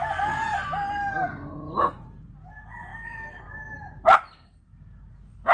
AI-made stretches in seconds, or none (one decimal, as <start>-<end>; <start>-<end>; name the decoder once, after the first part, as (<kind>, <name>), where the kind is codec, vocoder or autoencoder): 2.9-3.4 (autoencoder, DAC-VAE)